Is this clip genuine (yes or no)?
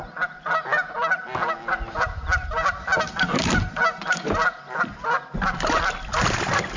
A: yes